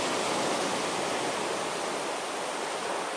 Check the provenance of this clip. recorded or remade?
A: recorded